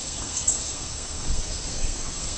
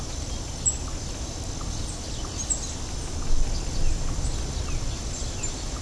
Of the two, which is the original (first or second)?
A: second